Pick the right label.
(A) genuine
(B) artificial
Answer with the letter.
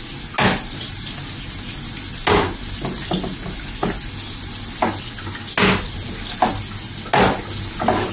A